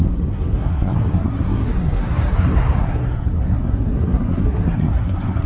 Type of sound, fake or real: fake